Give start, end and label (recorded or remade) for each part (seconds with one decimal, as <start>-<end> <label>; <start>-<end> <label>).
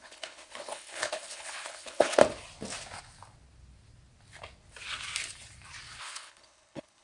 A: 0.0-2.2 remade; 2.2-6.0 recorded; 6.0-7.0 remade